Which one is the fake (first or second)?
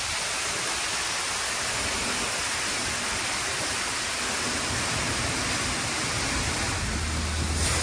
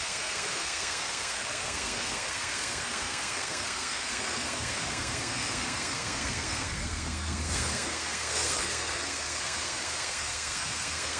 second